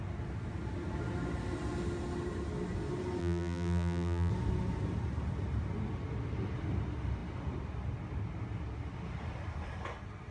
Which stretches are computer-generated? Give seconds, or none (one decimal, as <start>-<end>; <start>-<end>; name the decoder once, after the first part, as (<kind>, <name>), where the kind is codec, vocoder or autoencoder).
3.2-4.3 (vocoder, BigVGAN v2)